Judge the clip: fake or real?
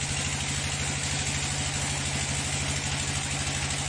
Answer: real